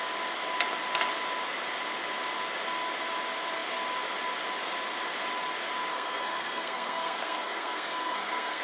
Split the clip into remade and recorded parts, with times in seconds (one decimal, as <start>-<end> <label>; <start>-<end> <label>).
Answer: 0.0-5.9 recorded; 5.9-8.6 remade